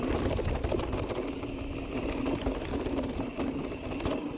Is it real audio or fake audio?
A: real